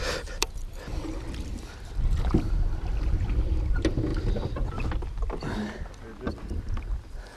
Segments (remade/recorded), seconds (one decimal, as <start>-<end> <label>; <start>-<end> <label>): 0.0-7.4 recorded